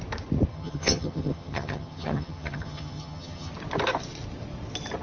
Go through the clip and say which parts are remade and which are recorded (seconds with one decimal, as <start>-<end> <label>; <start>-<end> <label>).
0.0-0.5 recorded; 0.5-3.5 remade; 3.5-5.0 recorded